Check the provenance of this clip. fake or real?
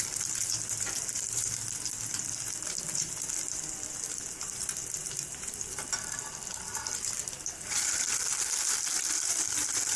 fake